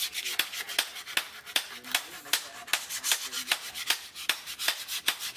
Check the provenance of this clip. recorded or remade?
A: recorded